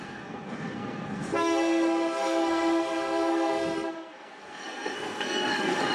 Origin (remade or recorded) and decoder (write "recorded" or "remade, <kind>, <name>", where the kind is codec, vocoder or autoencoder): remade, codec, SNAC